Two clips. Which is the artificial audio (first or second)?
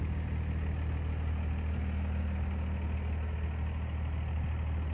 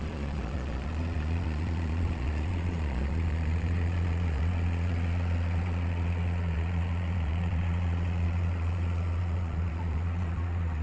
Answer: second